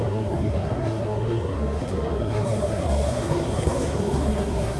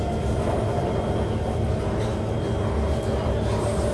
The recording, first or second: second